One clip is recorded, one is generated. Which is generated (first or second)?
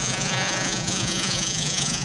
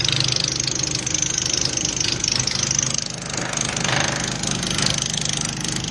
first